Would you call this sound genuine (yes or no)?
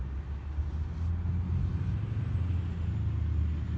yes